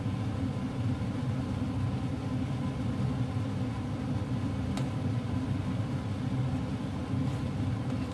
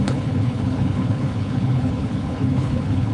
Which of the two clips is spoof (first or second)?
second